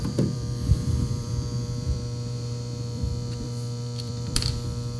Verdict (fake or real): fake